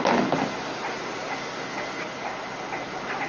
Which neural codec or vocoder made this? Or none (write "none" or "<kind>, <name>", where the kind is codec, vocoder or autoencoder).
none